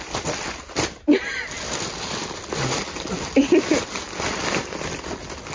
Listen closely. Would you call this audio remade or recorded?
recorded